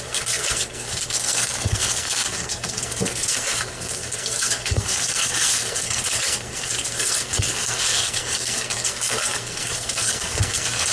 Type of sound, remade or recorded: remade